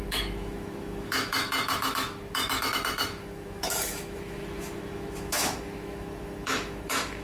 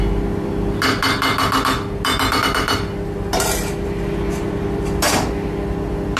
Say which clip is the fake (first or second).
first